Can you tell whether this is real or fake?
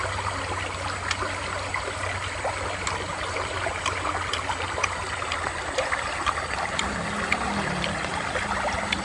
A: real